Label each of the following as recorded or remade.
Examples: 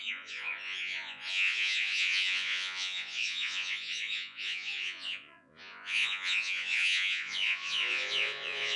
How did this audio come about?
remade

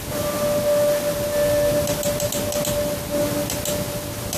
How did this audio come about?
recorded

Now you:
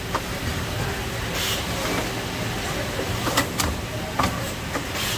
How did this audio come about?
recorded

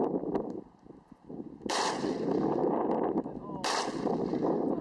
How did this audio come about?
recorded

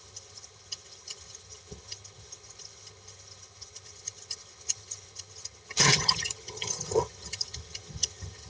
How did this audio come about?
remade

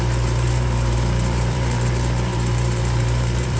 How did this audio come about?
remade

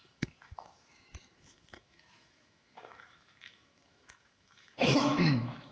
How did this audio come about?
remade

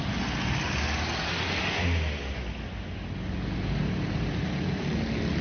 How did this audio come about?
recorded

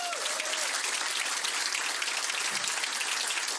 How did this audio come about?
recorded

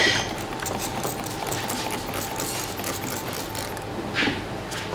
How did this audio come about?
recorded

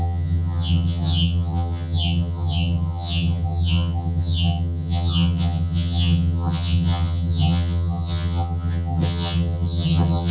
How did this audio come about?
remade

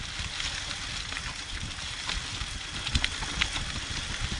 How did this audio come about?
recorded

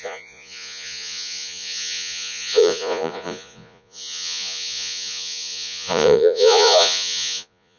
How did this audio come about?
remade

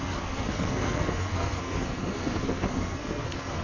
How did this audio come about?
remade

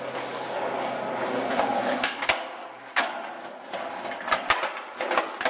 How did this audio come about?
recorded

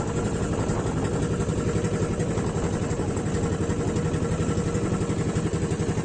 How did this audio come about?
recorded